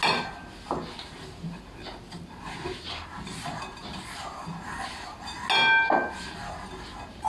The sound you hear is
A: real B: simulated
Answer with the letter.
A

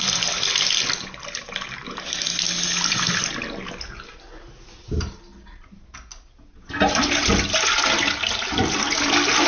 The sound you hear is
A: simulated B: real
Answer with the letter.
B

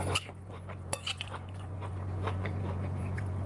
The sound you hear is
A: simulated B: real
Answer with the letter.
A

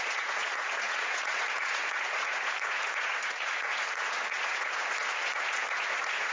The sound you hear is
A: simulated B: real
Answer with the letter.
A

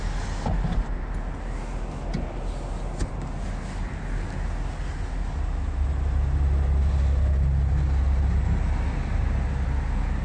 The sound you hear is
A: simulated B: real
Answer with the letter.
B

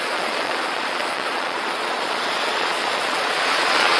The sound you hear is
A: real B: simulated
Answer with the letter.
B